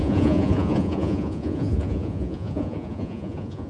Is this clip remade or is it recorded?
remade